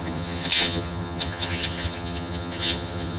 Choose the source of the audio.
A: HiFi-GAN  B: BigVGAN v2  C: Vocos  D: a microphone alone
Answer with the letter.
A